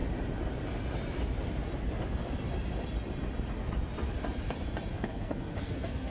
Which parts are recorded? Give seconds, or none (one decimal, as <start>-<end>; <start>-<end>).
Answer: 0.0-4.9